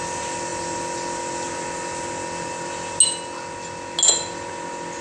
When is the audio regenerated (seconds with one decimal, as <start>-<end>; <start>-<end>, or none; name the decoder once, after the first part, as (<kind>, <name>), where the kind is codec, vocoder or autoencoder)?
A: none